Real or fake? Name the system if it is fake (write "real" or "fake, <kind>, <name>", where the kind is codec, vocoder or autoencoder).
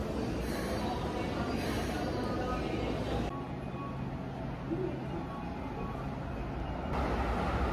real